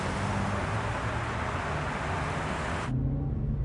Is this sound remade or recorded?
recorded